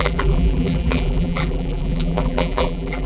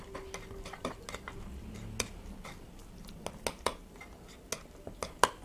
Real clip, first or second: second